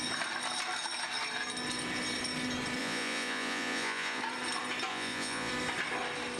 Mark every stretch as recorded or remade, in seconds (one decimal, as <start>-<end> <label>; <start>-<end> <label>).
0.0-2.8 recorded; 2.8-4.2 remade; 4.2-4.9 recorded; 4.9-5.5 remade; 5.5-6.4 recorded